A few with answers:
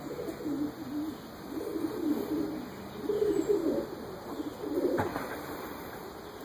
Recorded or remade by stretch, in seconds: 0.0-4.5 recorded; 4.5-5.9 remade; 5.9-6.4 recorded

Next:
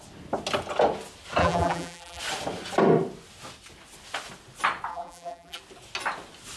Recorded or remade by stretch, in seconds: 0.0-1.4 recorded; 1.4-2.2 remade; 2.2-4.9 recorded; 4.9-5.6 remade; 5.6-6.6 recorded

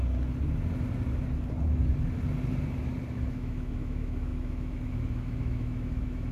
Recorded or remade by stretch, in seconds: 0.0-3.3 recorded; 3.3-6.3 remade

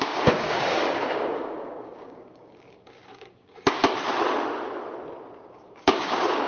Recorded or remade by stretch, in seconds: 0.0-3.8 remade; 3.8-5.3 recorded; 5.3-6.5 remade

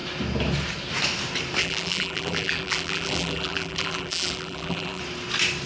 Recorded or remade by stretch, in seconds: 0.0-1.6 recorded; 1.6-5.0 remade; 5.0-5.7 recorded

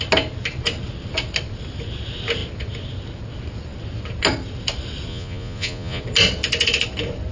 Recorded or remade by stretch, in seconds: 0.0-5.1 recorded; 5.1-6.0 remade; 6.0-7.3 recorded

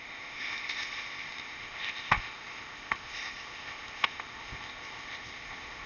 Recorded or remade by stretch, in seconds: 0.0-5.9 remade

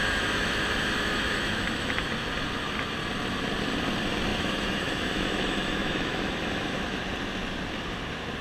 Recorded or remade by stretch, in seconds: 0.0-2.1 remade; 2.1-4.3 recorded; 4.3-7.0 remade; 7.0-8.4 recorded